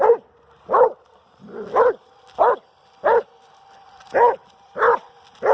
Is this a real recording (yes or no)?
yes